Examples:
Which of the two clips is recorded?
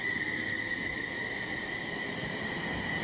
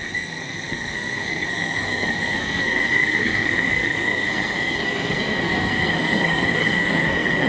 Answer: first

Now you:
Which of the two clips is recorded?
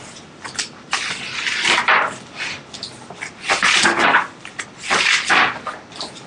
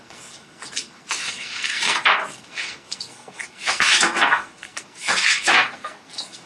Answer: first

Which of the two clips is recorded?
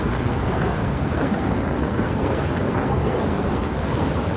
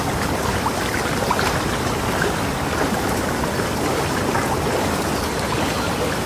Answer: second